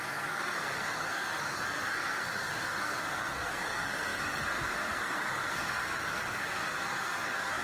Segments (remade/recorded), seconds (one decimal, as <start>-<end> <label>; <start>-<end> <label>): 0.0-7.6 remade